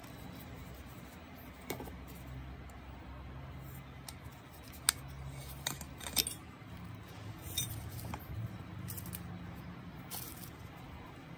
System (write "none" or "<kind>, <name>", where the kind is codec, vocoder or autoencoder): none